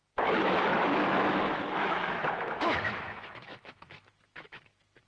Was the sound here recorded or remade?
remade